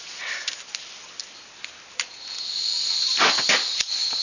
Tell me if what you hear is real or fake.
real